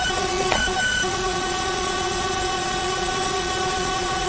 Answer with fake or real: fake